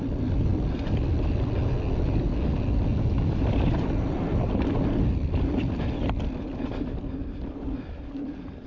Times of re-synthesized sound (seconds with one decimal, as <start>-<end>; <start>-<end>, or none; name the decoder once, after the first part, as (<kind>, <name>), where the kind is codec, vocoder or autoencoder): none